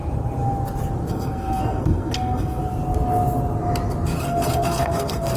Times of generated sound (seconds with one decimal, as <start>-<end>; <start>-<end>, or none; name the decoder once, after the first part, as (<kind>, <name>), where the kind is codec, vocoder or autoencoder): 1.1-2.6 (codec, SNAC); 4.2-5.4